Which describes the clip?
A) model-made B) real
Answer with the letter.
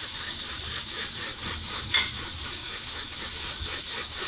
A